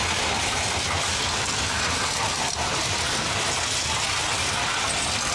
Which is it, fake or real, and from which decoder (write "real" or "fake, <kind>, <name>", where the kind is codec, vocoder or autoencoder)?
real